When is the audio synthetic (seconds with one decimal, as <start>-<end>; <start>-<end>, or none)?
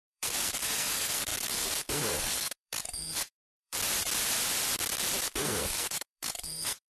0.0-3.8; 5.2-7.0